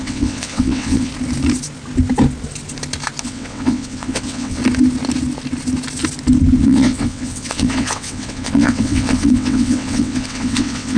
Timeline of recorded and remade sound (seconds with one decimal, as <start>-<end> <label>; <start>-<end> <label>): 0.0-1.1 remade; 1.1-3.2 recorded; 3.2-4.6 remade; 4.6-6.6 recorded; 6.6-11.0 remade